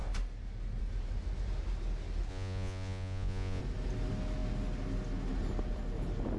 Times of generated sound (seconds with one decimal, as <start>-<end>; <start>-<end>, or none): 2.3-3.6